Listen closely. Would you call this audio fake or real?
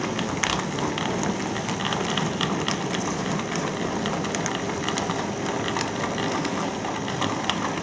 real